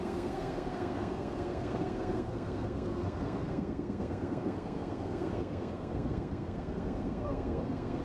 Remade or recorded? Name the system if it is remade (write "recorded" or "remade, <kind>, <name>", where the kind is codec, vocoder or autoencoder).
remade, codec, SNAC